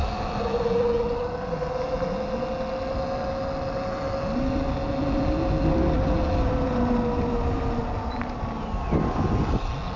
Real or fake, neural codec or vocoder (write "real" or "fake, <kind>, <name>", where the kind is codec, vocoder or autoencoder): real